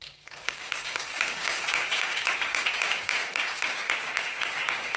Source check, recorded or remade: remade